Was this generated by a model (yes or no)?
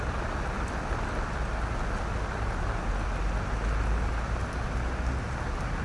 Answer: no